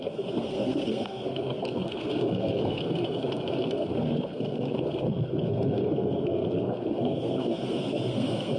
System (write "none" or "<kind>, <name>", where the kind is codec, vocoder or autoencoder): codec, SNAC